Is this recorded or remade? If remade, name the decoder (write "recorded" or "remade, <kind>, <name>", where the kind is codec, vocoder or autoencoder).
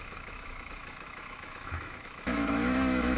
remade, autoencoder, DAC-VAE